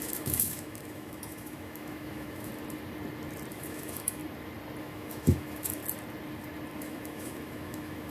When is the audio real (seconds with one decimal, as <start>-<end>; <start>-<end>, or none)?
2.5-3.5; 4.2-4.8; 5.8-6.8